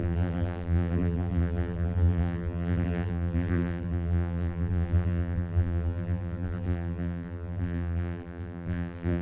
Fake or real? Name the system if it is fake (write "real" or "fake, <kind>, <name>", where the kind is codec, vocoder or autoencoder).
fake, vocoder, BigVGAN v2